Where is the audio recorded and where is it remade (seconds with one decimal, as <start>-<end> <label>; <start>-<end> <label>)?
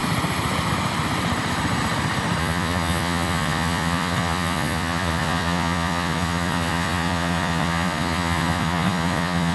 0.0-2.4 recorded; 2.4-9.5 remade